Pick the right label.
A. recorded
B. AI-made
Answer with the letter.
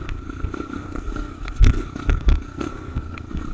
B